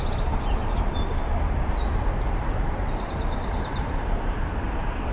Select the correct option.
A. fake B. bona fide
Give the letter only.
A